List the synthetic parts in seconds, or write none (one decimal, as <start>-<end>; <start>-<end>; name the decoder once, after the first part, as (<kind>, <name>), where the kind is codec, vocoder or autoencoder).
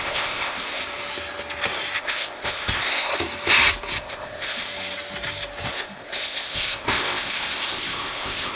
0.0-0.8 (codec, ZipCodec); 2.0-3.1; 4.0-4.7; 5.7-8.6